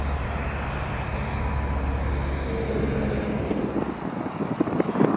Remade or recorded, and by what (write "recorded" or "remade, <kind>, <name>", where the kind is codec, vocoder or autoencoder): recorded